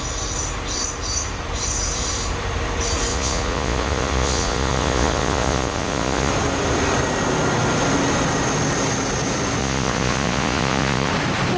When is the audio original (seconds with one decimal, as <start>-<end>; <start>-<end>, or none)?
0.0-3.1; 6.3-9.6; 11.1-11.6

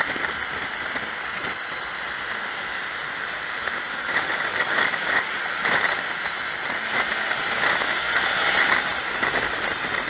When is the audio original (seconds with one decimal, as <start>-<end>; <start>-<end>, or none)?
0.0-4.5; 5.4-10.1